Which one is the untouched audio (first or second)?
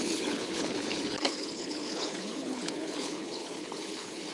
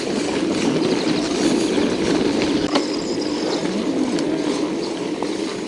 second